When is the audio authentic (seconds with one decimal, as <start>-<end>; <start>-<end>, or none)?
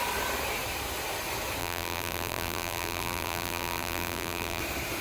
0.0-1.6; 4.6-5.0